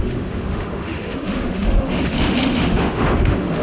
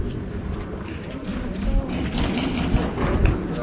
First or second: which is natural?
second